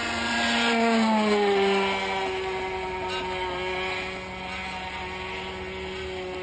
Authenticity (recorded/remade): recorded